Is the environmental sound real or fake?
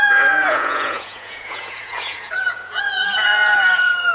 fake